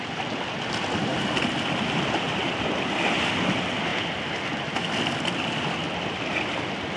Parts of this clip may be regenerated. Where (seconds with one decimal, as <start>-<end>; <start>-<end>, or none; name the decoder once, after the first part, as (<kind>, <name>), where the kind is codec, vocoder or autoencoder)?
none